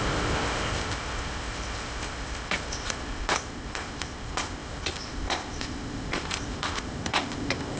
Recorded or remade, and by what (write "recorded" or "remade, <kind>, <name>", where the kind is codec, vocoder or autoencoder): remade, codec, ZipCodec